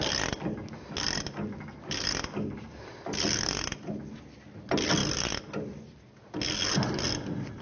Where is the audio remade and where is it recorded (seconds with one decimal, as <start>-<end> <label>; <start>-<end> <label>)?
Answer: 0.0-7.6 recorded